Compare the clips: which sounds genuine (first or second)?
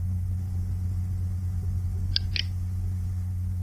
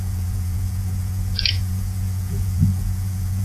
first